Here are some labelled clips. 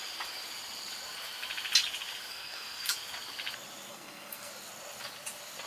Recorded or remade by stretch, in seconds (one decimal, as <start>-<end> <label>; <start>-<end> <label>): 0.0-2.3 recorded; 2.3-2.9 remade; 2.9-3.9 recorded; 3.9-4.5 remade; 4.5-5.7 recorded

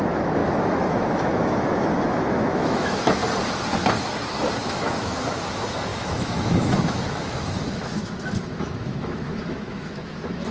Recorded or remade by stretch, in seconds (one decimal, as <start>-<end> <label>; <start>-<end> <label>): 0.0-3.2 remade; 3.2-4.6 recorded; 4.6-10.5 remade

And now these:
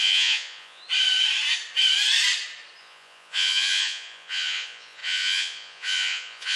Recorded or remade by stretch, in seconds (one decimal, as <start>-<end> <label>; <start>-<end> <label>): 0.0-0.8 remade; 0.8-2.8 recorded; 2.8-6.6 remade

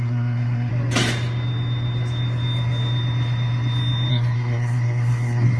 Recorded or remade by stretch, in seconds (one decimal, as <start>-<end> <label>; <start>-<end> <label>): 0.0-0.7 remade; 0.7-4.1 recorded; 4.1-5.6 remade